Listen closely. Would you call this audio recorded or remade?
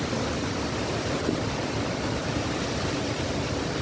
recorded